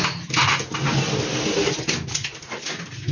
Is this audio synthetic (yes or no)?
no